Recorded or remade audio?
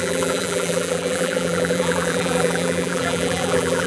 remade